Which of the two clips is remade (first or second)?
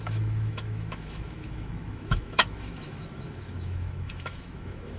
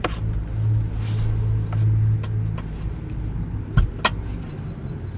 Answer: first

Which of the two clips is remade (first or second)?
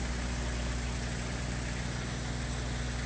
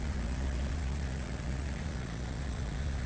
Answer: second